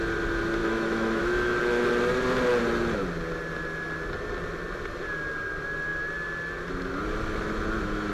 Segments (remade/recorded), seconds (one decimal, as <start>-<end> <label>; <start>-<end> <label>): 0.0-0.6 recorded; 0.6-1.6 remade; 1.6-8.1 recorded